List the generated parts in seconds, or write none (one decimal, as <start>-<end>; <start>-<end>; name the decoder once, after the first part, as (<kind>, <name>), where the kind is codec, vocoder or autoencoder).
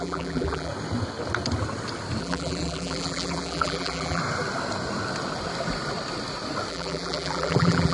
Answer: 0.0-0.7 (vocoder, BigVGAN v2); 2.2-4.2; 6.7-7.9